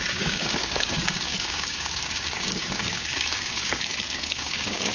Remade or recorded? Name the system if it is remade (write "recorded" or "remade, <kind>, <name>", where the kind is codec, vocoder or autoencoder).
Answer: remade, codec, DAC